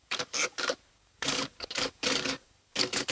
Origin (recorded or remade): remade